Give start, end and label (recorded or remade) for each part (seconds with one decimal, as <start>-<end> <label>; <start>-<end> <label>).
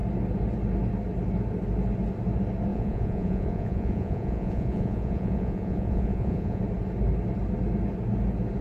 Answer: 0.0-2.7 recorded; 2.7-6.6 remade; 6.6-8.6 recorded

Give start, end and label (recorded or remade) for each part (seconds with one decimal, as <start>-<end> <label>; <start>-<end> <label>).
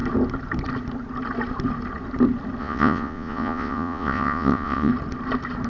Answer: 0.0-2.6 recorded; 2.6-4.9 remade; 4.9-5.7 recorded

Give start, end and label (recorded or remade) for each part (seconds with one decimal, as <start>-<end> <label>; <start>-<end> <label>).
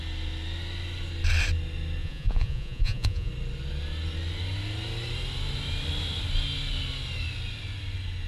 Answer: 0.0-2.0 recorded; 2.0-3.3 remade; 3.3-8.3 recorded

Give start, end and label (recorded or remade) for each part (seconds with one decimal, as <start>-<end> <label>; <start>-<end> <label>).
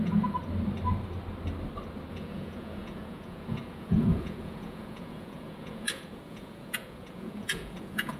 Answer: 0.0-0.4 remade; 0.4-2.1 recorded; 2.1-8.2 remade